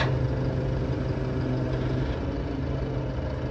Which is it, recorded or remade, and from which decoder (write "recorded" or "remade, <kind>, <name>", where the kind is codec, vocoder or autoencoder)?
recorded